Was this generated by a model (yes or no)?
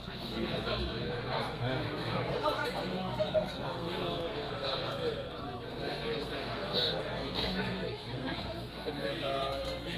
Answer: yes